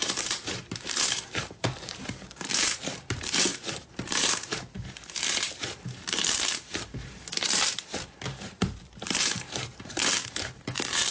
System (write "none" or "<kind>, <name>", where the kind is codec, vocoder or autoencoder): vocoder, BigVGAN v2